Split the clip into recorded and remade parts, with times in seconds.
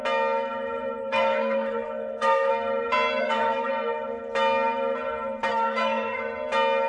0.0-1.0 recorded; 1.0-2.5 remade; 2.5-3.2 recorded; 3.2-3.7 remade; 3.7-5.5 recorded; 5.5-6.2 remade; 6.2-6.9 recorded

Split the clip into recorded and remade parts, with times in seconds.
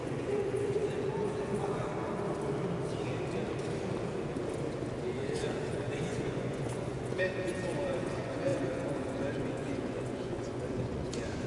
0.0-1.8 remade; 1.8-5.7 recorded; 5.7-11.5 remade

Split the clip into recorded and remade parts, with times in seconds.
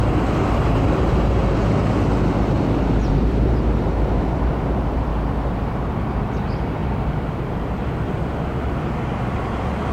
0.0-1.4 remade; 1.4-3.1 recorded; 3.1-5.1 remade; 5.1-5.7 recorded; 5.7-6.8 remade; 6.8-9.0 recorded; 9.0-9.9 remade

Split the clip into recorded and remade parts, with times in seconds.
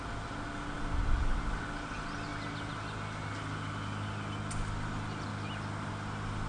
0.0-6.5 recorded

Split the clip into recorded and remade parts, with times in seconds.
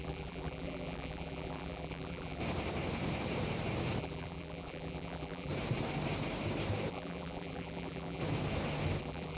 0.0-2.4 remade; 2.4-4.0 recorded; 4.0-5.5 remade; 5.5-6.9 recorded; 6.9-8.2 remade; 8.2-9.0 recorded; 9.0-9.4 remade